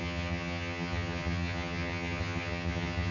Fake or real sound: fake